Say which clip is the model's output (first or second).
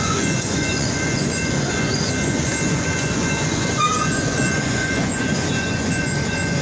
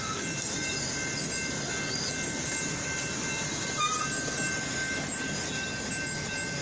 first